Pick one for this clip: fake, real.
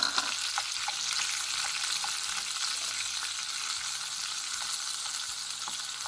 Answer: real